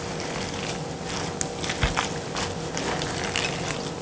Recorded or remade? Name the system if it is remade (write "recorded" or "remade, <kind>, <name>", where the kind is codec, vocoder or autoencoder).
recorded